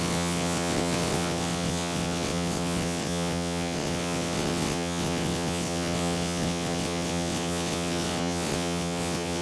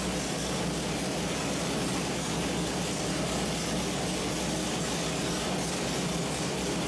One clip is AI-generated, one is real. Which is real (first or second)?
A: second